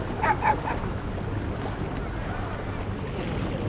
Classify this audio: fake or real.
real